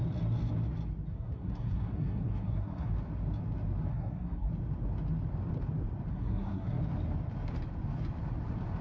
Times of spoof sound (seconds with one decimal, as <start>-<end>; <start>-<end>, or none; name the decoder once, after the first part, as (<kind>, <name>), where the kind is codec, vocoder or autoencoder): 1.1-2.9 (codec, SNAC); 3.9-4.5; 6.1-6.8